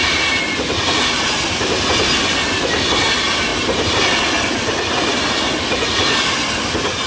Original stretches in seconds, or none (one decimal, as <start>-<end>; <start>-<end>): 0.0-3.5; 4.0-7.1